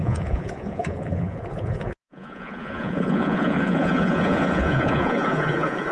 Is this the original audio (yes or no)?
no